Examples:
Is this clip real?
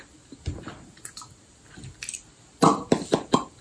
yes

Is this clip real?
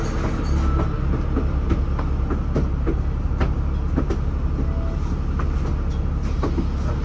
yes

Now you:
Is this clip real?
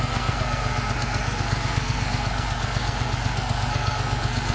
no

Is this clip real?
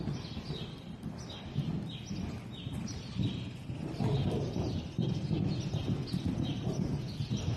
yes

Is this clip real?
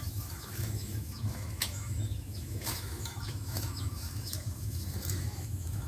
no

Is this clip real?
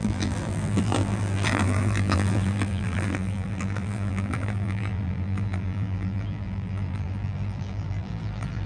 no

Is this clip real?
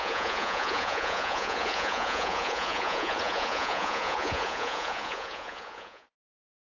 no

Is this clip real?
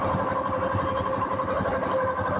yes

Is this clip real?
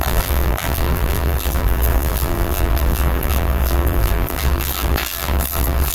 no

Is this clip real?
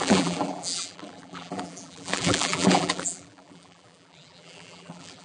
no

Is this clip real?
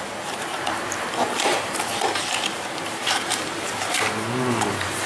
no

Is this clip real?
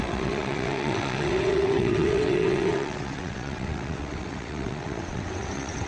no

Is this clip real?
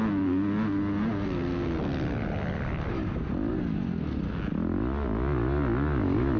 yes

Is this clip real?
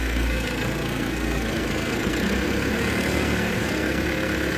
no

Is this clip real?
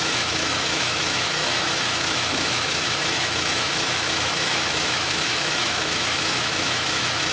no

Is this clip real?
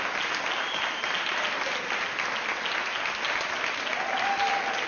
yes